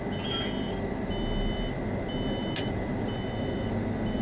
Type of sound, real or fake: real